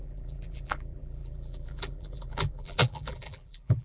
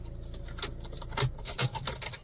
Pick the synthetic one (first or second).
first